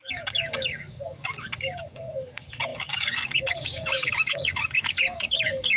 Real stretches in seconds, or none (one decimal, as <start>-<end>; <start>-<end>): none